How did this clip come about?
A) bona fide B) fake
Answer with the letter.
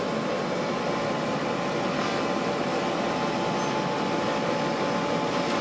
A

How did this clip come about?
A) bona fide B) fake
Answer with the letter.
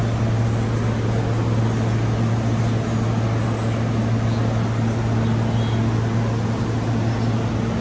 A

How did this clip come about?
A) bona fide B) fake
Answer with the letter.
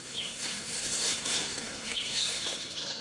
B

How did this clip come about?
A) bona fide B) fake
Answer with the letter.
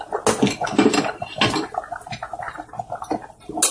A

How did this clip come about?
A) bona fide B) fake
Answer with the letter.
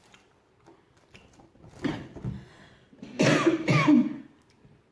A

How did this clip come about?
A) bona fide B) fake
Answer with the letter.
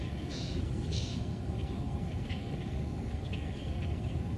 B